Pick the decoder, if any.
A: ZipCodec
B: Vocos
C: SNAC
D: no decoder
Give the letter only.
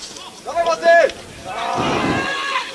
D